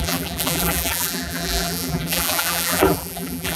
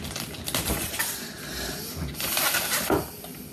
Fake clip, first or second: first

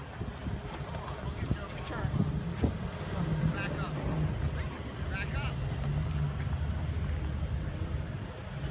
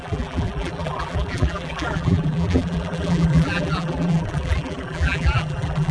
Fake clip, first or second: second